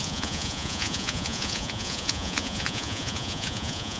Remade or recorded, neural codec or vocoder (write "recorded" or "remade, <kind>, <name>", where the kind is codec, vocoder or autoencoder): remade, vocoder, Vocos